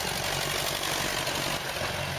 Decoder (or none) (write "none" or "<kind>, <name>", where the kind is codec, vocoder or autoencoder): none